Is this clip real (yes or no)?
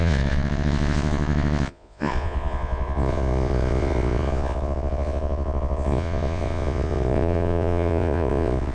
no